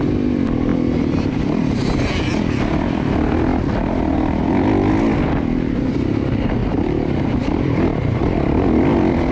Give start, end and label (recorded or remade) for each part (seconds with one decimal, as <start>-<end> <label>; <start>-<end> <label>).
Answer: 0.0-0.7 remade; 0.7-1.3 recorded; 1.3-3.5 remade; 3.5-5.9 recorded; 5.9-9.3 remade